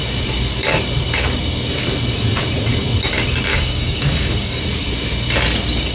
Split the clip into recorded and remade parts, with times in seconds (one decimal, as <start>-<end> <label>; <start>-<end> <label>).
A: 0.0-3.5 recorded; 3.5-4.6 remade; 4.6-5.9 recorded